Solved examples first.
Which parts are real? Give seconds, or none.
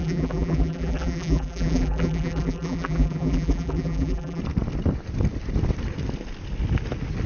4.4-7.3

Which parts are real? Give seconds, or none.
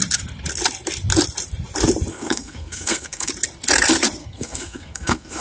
0.0-2.1; 3.3-4.2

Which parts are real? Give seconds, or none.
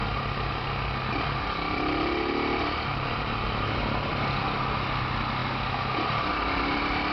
0.0-4.1; 4.6-7.1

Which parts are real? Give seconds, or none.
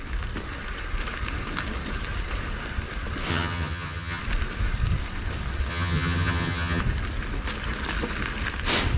0.0-3.3; 4.2-5.7; 6.8-9.0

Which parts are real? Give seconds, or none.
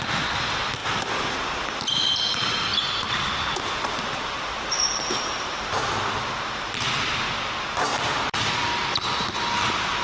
0.0-2.7; 5.8-7.9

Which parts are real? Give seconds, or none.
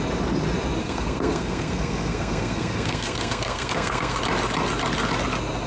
0.0-0.8; 4.2-5.7